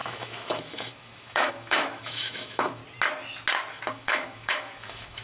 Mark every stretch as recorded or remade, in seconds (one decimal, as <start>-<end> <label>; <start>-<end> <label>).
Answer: 0.0-2.8 remade; 2.8-3.9 recorded; 3.9-5.2 remade